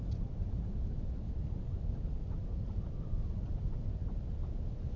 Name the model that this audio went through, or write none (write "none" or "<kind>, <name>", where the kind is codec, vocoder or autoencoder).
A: none